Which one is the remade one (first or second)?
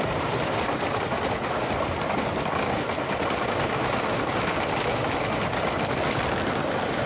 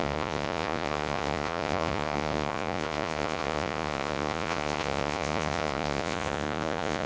second